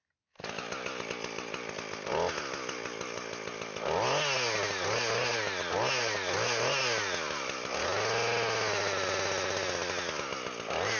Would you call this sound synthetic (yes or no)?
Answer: no